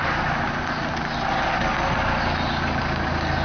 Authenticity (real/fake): real